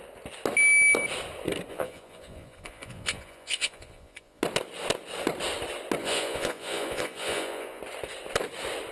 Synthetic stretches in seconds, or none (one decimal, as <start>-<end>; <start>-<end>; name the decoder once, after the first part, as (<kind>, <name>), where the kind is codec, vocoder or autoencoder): 1.7-4.4 (vocoder, Vocos); 6.0-7.8

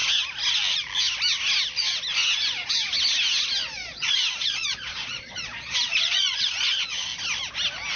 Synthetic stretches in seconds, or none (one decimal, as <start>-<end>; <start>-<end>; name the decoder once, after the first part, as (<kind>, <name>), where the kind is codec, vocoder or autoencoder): 3.6-7.1 (vocoder, Vocos)

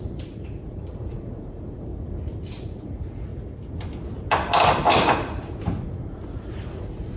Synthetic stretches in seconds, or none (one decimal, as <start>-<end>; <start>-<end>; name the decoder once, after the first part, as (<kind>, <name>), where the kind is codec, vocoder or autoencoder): 0.0-1.9 (vocoder, Vocos); 2.6-3.3; 5.0-7.2

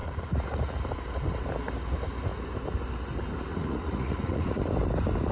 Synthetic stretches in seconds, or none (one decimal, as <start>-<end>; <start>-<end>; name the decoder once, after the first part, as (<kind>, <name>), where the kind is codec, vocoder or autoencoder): 0.0-0.7 (vocoder, Vocos); 3.5-4.7

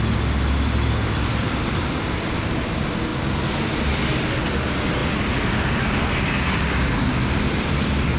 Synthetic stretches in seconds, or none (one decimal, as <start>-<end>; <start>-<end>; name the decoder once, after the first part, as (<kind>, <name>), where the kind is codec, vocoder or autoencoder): none

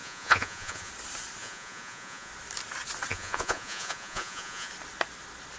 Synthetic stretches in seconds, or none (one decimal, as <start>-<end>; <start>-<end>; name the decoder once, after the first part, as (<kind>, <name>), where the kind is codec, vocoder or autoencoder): 0.0-0.9 (vocoder, Vocos); 1.4-2.3; 3.1-4.7